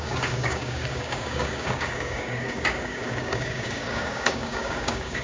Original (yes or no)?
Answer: no